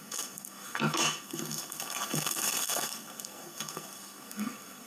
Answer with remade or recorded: remade